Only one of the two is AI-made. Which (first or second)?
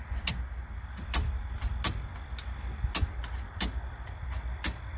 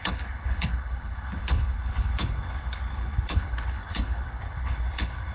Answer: second